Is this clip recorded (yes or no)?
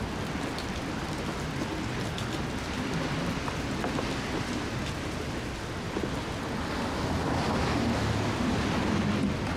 yes